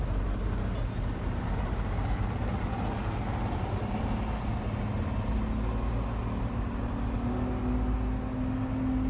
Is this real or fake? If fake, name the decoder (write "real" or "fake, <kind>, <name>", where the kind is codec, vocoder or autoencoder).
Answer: real